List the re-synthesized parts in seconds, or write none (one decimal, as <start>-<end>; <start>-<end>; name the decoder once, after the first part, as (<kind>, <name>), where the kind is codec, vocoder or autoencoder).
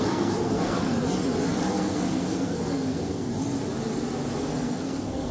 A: 0.0-1.0 (codec, SNAC); 1.7-3.3; 4.4-5.3